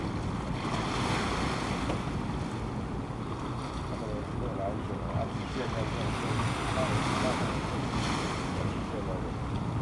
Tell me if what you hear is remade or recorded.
recorded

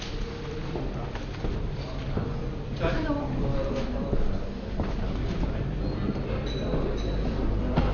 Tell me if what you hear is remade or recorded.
recorded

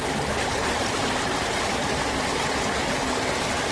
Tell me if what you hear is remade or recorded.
recorded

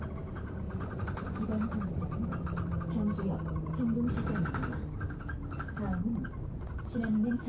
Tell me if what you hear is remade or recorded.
recorded